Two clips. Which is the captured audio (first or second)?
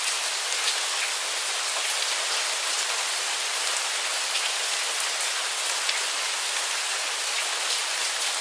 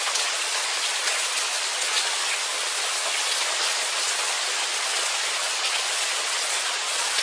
first